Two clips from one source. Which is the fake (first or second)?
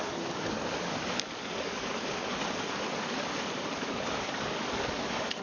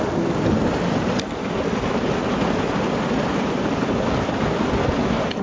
first